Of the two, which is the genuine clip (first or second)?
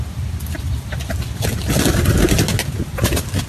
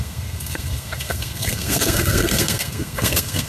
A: first